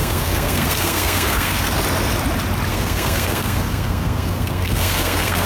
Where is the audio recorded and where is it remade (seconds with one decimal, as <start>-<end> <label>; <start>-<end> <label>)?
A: 0.0-1.7 remade; 1.7-2.7 recorded; 2.7-5.5 remade